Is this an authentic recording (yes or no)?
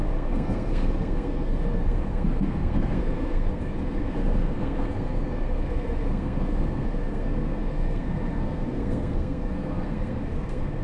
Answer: no